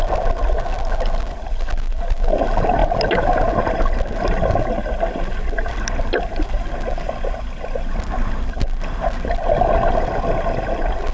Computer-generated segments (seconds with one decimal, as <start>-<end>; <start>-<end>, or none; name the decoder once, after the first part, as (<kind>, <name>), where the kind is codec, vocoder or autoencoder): none